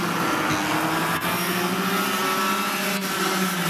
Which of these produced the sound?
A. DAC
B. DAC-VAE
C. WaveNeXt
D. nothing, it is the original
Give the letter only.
D